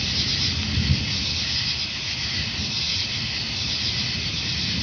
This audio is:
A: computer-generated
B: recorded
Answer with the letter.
B